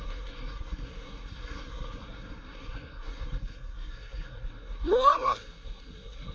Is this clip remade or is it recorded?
remade